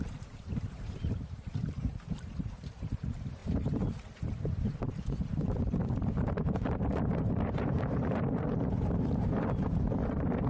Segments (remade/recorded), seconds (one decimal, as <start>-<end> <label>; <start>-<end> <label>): 0.0-10.5 remade